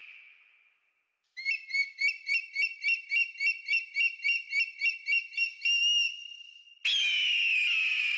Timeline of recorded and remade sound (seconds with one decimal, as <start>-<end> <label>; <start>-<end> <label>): 0.0-4.9 remade; 4.9-8.2 recorded